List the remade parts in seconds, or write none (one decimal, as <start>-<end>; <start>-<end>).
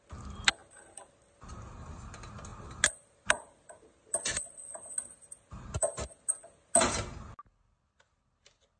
none